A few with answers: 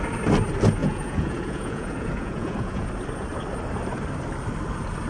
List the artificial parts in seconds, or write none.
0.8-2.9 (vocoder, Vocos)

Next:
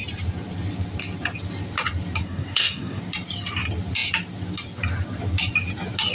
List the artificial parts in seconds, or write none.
2.2-3.0 (codec, SNAC)

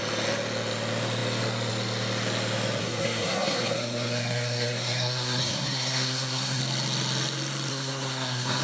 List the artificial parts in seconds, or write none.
2.8-6.6 (codec, SNAC); 7.7-8.6